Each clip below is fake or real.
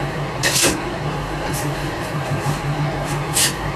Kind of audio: fake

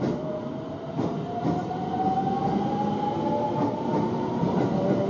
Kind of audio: real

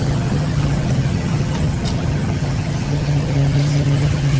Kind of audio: fake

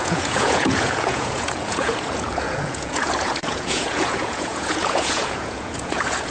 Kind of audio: fake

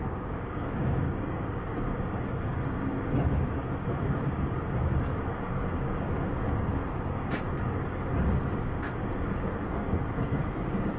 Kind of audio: fake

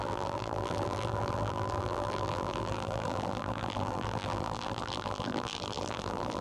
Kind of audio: fake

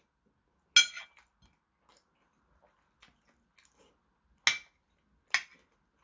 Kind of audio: real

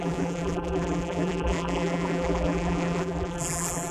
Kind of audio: fake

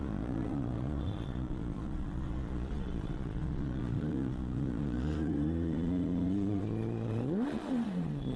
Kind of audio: fake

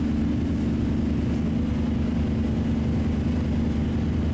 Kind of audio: real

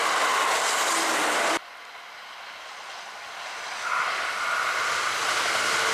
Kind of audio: real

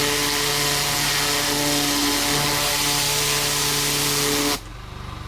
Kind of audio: real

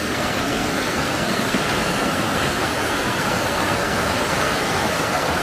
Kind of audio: fake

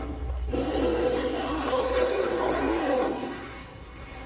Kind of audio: fake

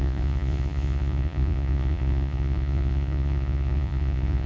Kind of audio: fake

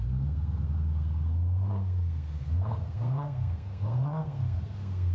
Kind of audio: fake